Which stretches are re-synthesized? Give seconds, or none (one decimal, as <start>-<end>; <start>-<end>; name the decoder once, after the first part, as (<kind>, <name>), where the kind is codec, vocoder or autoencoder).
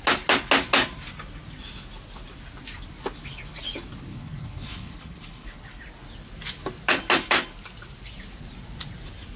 4.1-5.8 (codec, HILCodec)